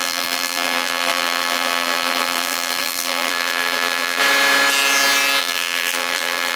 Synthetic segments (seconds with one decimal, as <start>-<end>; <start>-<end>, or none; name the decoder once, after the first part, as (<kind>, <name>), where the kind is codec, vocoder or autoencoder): 0.0-4.2 (vocoder, BigVGAN v2); 5.4-6.6